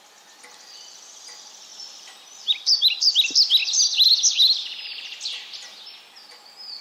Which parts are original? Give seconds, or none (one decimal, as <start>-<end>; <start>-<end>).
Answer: 0.0-1.7; 3.1-6.8